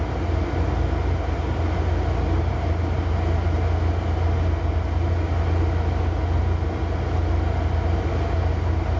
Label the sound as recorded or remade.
recorded